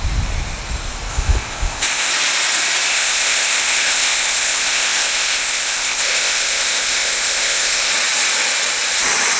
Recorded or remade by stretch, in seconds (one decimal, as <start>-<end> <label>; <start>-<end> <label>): 0.0-1.1 recorded; 1.1-2.1 remade; 2.1-2.9 recorded; 2.9-7.9 remade; 7.9-9.4 recorded

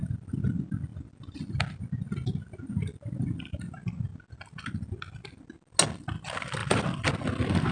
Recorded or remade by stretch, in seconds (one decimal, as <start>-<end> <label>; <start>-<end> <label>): 0.0-7.7 recorded

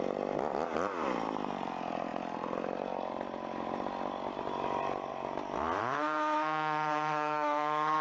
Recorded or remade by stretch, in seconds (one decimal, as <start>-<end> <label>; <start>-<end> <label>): 0.0-5.8 recorded; 5.8-8.0 remade